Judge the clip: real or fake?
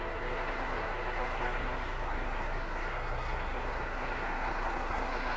fake